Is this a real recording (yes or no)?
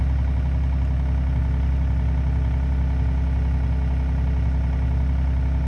yes